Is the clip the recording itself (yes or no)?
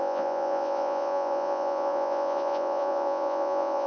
no